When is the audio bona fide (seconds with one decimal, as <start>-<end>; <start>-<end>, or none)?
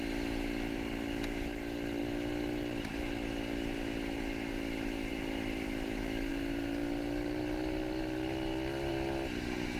0.0-9.8